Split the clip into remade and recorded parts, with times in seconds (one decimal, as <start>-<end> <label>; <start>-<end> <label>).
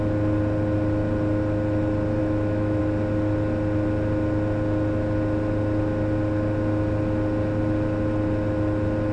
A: 0.0-2.2 recorded; 2.2-2.8 remade; 2.8-9.1 recorded